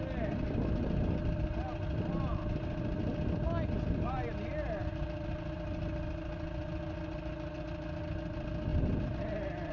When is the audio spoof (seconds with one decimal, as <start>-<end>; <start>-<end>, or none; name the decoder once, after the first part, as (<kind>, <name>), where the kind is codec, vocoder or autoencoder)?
none